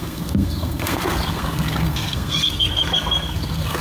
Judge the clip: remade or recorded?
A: remade